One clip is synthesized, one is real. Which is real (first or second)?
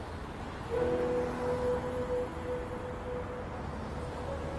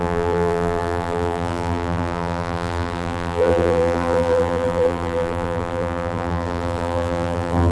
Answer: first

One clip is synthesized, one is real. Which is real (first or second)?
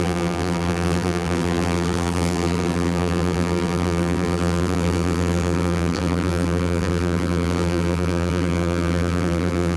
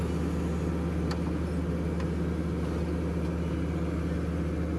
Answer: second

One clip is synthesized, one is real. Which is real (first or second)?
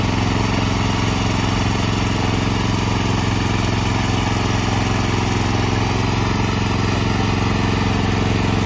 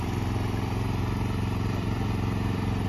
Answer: first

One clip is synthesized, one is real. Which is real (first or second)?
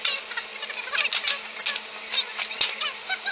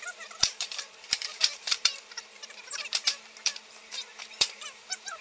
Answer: first